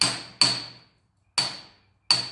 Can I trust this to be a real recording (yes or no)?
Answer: yes